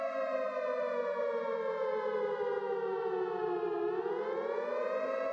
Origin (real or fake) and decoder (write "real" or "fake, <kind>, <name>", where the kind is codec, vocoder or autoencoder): real